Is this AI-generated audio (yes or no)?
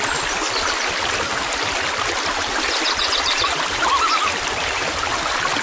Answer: no